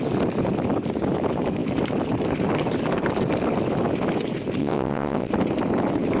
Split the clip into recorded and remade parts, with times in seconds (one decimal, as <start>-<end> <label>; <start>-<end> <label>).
0.0-4.6 recorded; 4.6-5.3 remade; 5.3-6.2 recorded